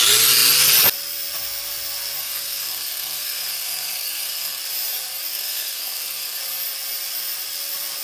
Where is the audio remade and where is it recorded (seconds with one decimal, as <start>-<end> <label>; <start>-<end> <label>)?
0.0-2.2 recorded; 2.2-4.6 remade; 4.6-5.3 recorded; 5.3-6.4 remade; 6.4-8.0 recorded